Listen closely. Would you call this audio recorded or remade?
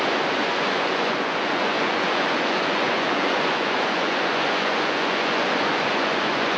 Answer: remade